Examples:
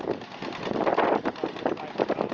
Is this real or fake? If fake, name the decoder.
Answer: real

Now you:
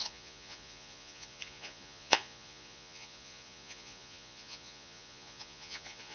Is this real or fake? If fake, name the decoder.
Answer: fake, vocoder, Vocos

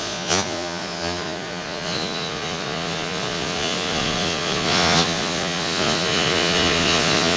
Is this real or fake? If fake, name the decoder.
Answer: fake, vocoder, Vocos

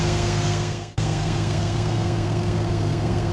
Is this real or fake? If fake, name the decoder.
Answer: fake, codec, SNAC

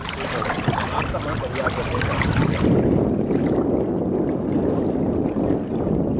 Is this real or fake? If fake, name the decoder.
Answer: real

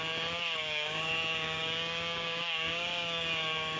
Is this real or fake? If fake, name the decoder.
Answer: fake, codec, DAC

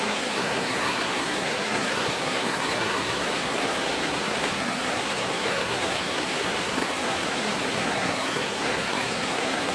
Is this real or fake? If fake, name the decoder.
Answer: fake, codec, SNAC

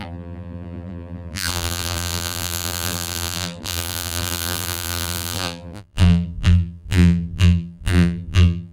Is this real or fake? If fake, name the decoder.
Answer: fake, vocoder, BigVGAN v2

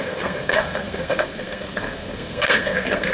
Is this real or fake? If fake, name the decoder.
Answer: fake, codec, SNAC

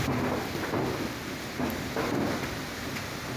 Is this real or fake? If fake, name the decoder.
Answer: real